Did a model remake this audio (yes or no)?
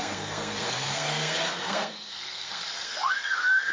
yes